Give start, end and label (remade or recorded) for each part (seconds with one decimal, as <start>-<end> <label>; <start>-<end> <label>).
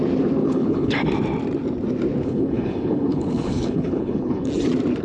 0.0-0.4 recorded; 0.4-0.9 remade; 0.9-2.2 recorded; 2.2-4.5 remade; 4.5-5.0 recorded